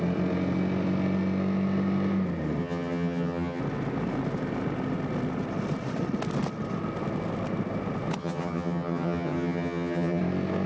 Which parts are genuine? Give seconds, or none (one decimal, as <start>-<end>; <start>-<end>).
0.0-2.6; 3.6-8.2; 10.2-10.7